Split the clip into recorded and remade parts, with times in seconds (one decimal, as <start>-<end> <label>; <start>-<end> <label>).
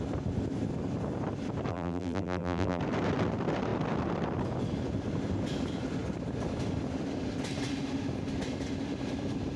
0.0-1.7 recorded; 1.7-2.8 remade; 2.8-9.6 recorded